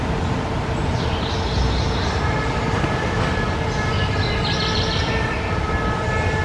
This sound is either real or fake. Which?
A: real